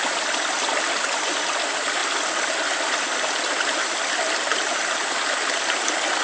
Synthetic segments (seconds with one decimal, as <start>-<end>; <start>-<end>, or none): 2.0-2.6